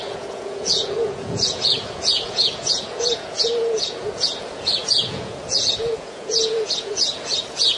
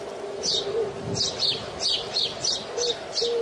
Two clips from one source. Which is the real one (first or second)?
second